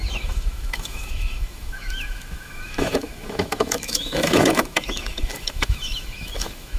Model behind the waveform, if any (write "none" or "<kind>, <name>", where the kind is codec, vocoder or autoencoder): autoencoder, DAC-VAE